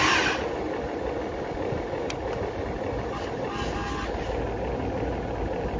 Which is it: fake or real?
real